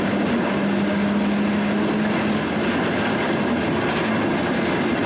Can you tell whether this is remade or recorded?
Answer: recorded